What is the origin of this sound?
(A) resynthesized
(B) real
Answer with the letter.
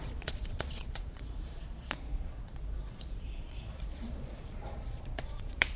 A